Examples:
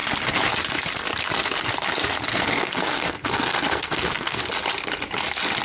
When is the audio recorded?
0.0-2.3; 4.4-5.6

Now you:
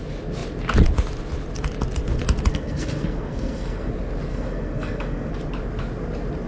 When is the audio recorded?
0.0-2.5; 3.9-4.3; 5.3-6.5

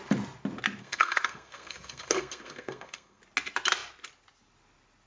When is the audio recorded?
0.0-0.8; 3.2-5.1

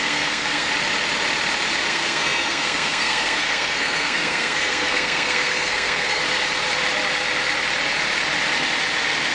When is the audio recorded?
0.7-1.9; 6.2-9.3

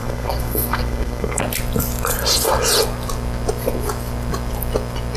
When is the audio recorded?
1.4-5.2

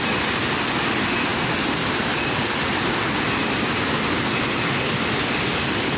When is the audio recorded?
0.0-6.0